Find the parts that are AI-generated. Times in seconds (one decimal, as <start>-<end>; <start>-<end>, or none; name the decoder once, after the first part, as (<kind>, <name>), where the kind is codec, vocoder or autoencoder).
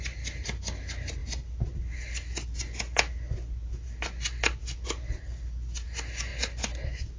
none